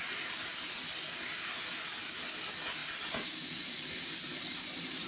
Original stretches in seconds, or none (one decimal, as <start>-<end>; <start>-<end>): 0.0-2.8